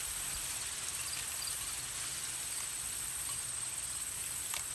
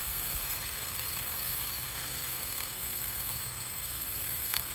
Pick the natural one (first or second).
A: first